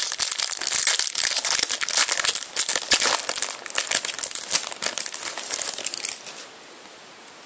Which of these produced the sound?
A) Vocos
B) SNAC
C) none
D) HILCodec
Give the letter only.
C